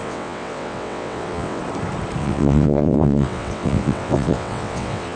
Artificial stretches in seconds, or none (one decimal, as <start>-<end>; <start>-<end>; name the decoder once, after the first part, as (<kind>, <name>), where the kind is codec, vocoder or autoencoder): 0.0-1.6 (vocoder, WaveNeXt); 2.2-5.2

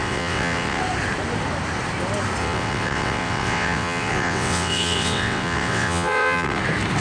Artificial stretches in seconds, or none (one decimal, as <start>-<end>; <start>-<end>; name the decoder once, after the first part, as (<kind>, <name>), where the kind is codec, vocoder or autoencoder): 0.0-0.8 (vocoder, WaveNeXt); 2.4-6.6

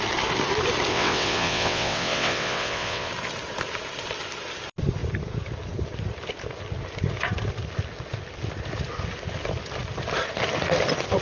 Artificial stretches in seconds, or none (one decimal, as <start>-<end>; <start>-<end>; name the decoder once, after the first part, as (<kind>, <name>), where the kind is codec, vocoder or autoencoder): 0.9-3.1 (vocoder, WaveNeXt)